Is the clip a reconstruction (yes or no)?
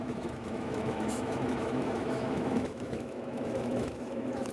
yes